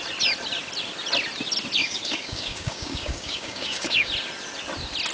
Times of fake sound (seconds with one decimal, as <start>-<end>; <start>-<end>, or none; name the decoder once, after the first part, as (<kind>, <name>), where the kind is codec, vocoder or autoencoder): 1.8-4.1 (codec, DAC)